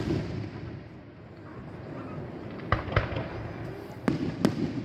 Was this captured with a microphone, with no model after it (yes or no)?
yes